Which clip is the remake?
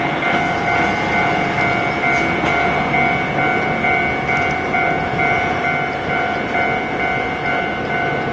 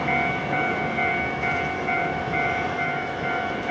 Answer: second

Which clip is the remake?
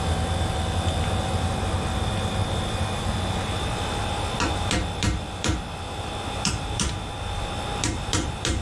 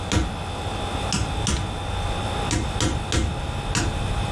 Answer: first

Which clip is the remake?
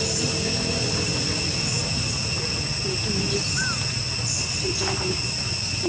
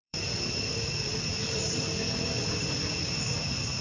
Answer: second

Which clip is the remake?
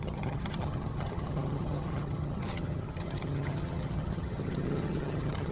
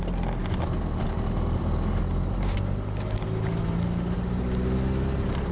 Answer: first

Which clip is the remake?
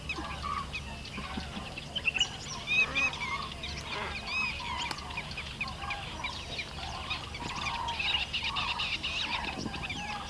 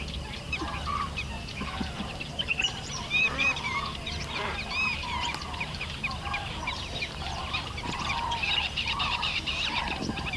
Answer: second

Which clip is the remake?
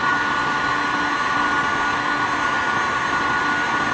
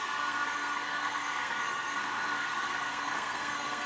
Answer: second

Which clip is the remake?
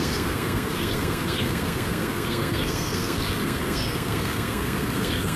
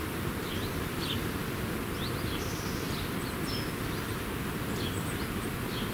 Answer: first